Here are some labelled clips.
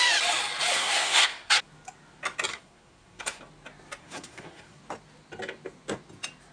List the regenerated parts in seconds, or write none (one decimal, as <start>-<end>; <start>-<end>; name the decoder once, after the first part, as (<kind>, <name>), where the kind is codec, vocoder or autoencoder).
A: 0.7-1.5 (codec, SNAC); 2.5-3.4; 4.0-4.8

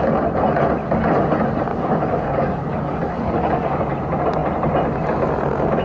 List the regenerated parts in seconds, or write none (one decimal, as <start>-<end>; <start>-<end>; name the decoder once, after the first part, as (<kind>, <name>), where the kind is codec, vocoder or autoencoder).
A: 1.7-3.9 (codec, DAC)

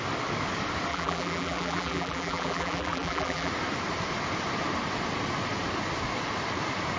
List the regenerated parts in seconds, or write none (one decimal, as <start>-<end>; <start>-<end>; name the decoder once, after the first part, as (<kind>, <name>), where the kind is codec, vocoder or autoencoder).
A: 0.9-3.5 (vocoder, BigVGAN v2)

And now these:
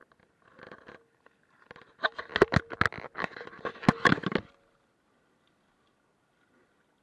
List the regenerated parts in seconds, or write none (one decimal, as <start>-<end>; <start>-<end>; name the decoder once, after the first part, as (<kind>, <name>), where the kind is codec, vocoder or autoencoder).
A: none

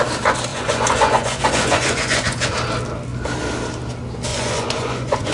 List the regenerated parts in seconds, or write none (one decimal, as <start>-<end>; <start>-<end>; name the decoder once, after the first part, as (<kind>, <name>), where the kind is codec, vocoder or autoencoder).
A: 0.5-2.5 (vocoder, Vocos); 4.3-5.3

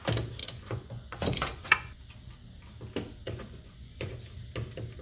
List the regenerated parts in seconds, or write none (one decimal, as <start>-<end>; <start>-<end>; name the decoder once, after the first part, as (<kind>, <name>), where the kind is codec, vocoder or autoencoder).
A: 0.4-2.0 (vocoder, Vocos); 3.2-4.1

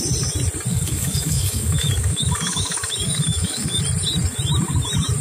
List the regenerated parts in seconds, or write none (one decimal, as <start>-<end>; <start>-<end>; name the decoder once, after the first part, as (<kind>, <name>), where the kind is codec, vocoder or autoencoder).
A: 0.7-3.8 (codec, DAC)